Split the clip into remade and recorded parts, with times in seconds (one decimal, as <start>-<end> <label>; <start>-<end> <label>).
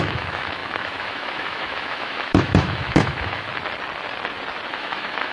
0.0-3.5 remade; 3.5-4.7 recorded; 4.7-5.3 remade